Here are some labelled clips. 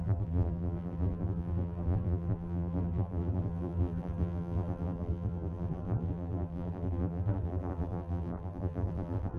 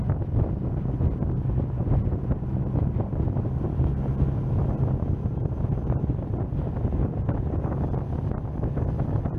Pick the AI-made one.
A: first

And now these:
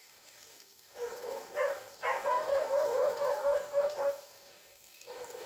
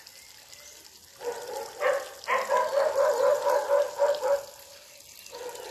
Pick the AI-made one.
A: first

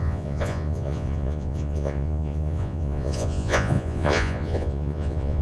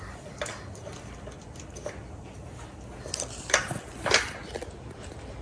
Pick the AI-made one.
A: first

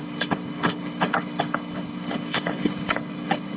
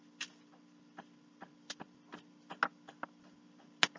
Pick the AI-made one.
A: first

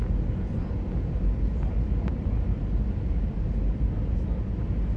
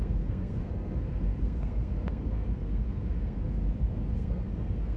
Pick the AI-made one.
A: second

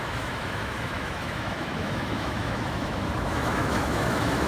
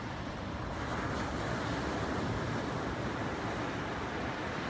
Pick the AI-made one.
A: first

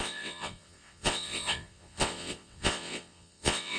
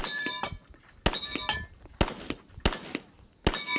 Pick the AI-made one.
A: first